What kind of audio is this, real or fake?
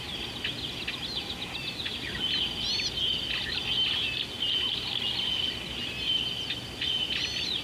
real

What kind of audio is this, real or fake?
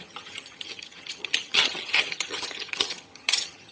fake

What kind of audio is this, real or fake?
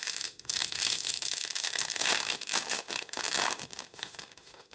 fake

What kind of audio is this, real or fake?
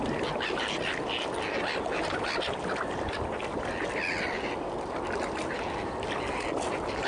real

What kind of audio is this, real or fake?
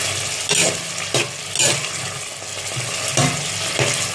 real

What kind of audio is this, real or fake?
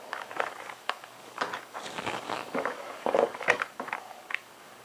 fake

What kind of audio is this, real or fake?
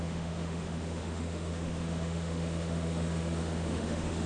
fake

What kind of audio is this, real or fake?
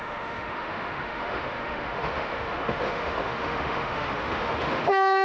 fake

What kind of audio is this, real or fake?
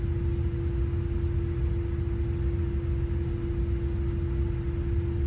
real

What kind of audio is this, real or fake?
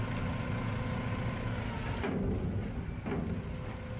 real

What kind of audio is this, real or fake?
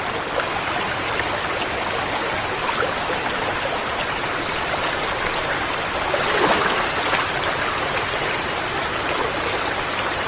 fake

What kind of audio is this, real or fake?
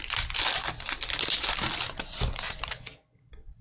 fake